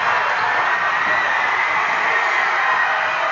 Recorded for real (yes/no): yes